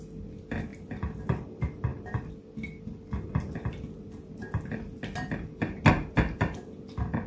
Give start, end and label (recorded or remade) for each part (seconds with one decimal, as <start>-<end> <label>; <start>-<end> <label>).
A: 0.0-7.3 recorded